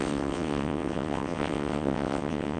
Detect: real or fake fake